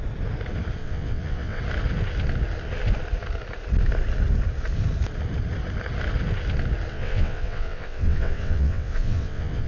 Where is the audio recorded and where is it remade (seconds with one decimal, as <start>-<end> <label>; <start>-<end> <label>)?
0.0-0.8 recorded; 0.8-1.6 remade; 1.6-6.9 recorded; 6.9-9.7 remade